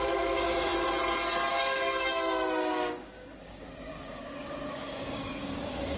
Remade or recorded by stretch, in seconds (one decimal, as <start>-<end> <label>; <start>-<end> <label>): 0.0-0.7 remade; 0.7-1.5 recorded; 1.5-6.0 remade

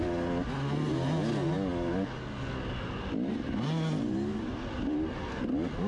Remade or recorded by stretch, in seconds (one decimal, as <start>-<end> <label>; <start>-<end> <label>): 0.0-5.9 recorded

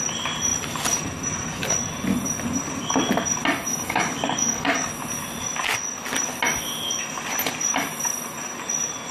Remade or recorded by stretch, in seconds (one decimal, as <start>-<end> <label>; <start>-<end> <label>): 0.0-3.7 recorded; 3.7-4.9 remade; 4.9-9.1 recorded

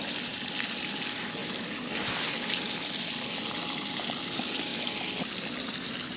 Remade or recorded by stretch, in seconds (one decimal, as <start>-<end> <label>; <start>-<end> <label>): 0.0-6.2 recorded

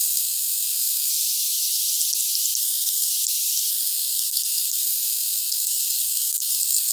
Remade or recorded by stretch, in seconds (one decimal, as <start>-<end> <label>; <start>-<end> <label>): 0.0-1.1 remade; 1.1-2.6 recorded; 2.6-3.1 remade; 3.1-3.7 recorded; 3.7-6.9 remade